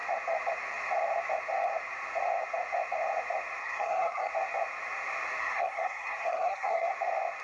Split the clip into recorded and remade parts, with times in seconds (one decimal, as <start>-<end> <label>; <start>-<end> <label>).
0.0-3.6 recorded; 3.6-4.3 remade; 4.3-5.4 recorded; 5.4-6.9 remade; 6.9-7.4 recorded